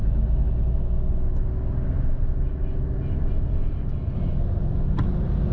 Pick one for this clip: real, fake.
real